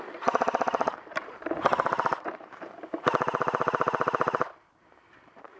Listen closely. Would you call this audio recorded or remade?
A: remade